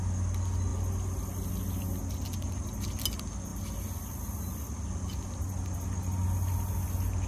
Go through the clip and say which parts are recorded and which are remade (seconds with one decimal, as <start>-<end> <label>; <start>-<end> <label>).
0.0-7.3 recorded